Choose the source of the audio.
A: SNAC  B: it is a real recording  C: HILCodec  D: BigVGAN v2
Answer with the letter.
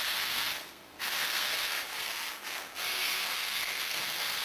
A